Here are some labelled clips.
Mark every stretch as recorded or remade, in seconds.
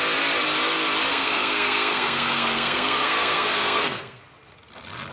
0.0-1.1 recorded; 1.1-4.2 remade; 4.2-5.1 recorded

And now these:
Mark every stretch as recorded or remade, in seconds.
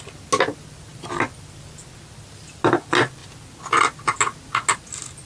0.0-5.3 recorded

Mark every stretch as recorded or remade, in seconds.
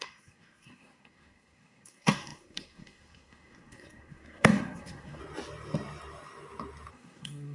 0.0-5.2 remade; 5.2-6.9 recorded; 6.9-7.5 remade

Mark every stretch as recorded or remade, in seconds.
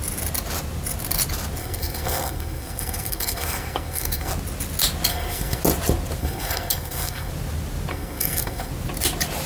0.0-1.6 recorded; 1.6-4.3 remade; 4.3-5.1 recorded; 5.1-5.6 remade; 5.6-6.2 recorded; 6.2-7.3 remade; 7.3-7.9 recorded; 7.9-8.7 remade; 8.7-9.5 recorded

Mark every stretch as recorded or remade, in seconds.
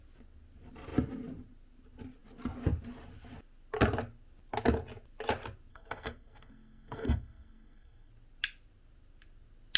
0.0-5.7 recorded; 5.7-8.1 remade; 8.1-9.8 recorded